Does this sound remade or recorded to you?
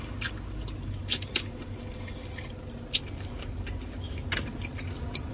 recorded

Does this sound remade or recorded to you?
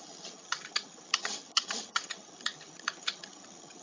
remade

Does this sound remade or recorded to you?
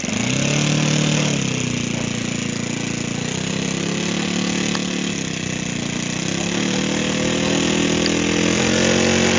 recorded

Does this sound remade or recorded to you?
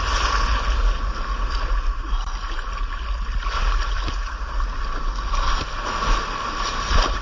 recorded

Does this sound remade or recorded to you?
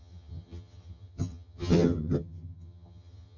remade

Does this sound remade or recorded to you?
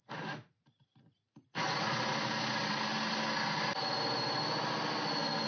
recorded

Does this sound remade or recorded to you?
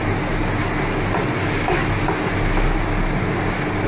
recorded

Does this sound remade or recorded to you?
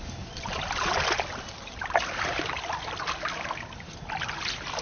recorded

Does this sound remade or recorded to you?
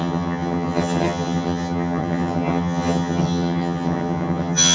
remade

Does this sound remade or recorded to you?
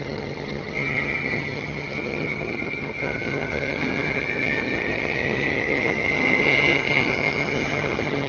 remade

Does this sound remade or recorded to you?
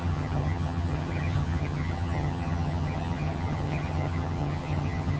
remade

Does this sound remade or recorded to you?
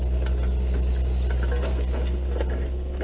recorded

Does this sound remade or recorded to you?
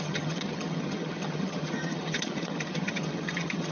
remade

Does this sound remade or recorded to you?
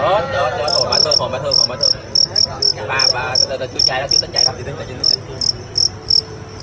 recorded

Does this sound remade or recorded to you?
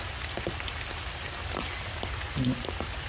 recorded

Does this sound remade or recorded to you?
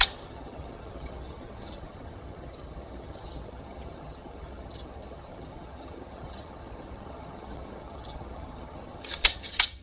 remade